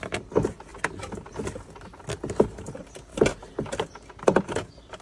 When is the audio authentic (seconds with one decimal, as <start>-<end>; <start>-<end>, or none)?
0.0-5.0